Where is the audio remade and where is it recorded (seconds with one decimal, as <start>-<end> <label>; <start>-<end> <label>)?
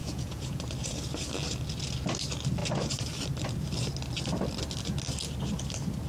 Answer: 0.0-0.6 remade; 0.6-6.1 recorded